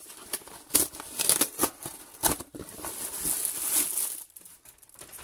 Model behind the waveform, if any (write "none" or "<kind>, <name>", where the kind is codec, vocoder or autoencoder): none